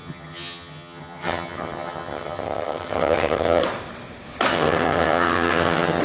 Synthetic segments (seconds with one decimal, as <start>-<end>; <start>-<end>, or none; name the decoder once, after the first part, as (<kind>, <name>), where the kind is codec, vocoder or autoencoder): 0.0-3.6 (vocoder, HiFi-GAN); 4.5-6.0